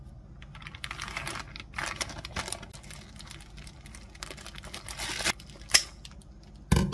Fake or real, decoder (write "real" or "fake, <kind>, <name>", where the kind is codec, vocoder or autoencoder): real